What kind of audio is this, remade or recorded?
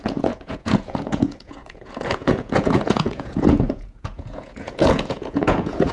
remade